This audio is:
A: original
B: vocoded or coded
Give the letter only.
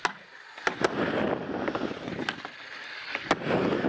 A